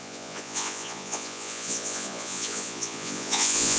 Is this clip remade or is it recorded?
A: remade